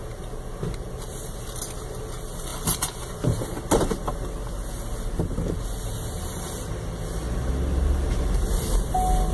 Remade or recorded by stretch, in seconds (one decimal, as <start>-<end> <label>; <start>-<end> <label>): 0.0-9.3 recorded